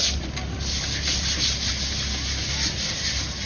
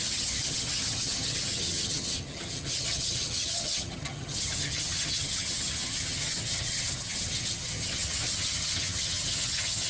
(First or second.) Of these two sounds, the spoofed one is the second